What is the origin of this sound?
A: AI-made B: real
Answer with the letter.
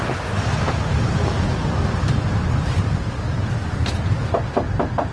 B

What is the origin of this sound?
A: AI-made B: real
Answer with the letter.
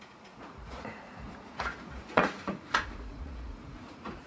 A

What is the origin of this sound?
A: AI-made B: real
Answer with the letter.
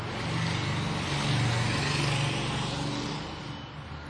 B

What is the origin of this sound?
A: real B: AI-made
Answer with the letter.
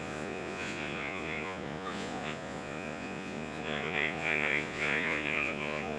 B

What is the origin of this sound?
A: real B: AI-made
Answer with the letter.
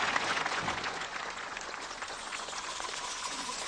B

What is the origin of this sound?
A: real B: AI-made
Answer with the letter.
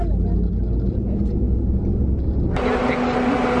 A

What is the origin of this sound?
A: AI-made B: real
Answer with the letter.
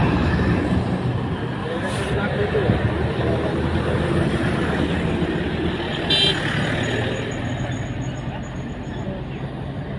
B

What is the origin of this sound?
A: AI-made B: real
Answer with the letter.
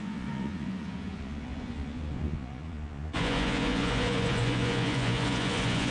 A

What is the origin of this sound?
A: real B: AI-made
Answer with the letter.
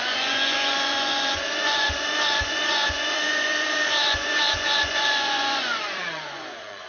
B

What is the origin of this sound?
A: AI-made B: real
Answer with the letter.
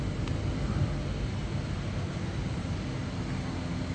B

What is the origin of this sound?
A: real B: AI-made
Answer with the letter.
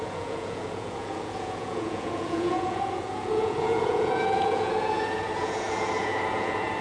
B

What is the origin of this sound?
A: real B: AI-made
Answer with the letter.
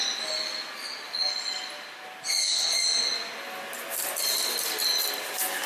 A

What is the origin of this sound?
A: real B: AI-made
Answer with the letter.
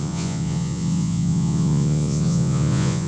B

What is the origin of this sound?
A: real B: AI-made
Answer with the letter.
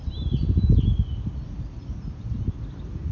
A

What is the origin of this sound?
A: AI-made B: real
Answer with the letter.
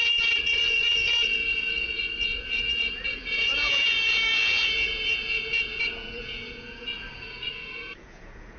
A